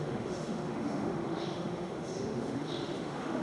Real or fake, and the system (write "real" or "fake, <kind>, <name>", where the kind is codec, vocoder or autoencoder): fake, autoencoder, DAC-VAE